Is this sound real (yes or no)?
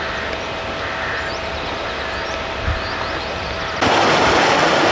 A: yes